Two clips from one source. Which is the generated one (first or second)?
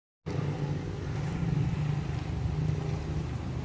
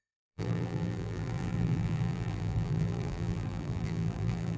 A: second